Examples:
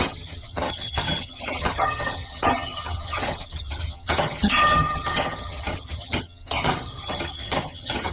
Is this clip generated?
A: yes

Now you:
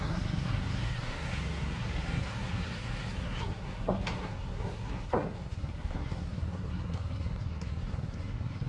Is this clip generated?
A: yes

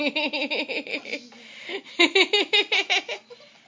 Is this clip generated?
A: no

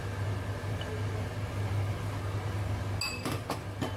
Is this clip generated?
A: no